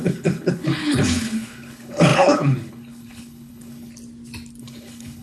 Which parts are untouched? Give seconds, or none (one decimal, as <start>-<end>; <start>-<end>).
3.9-4.6